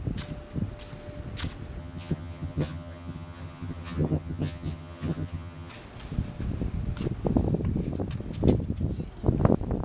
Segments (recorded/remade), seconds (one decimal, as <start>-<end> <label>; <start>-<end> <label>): 0.0-1.8 recorded; 1.8-5.7 remade; 5.7-9.8 recorded